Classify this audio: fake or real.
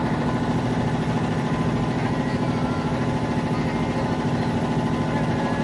real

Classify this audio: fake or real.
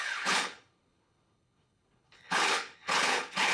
fake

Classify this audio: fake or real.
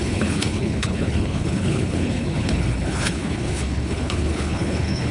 fake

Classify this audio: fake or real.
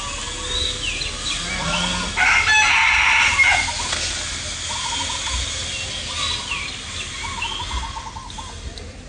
real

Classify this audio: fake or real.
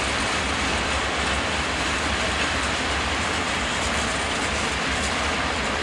real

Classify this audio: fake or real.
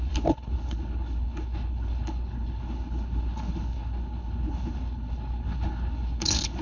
fake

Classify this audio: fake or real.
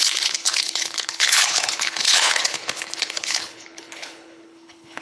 fake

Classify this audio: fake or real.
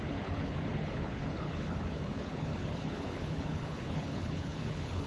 fake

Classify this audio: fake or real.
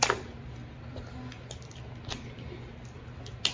real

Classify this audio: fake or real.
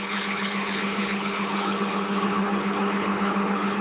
fake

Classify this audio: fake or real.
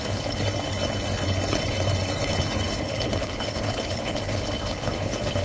fake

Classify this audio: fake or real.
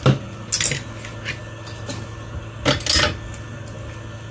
real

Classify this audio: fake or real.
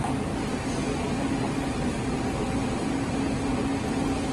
real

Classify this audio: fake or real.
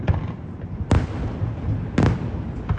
real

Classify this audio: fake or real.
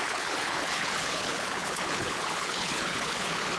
fake